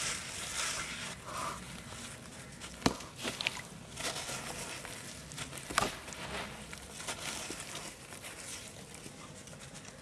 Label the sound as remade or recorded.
recorded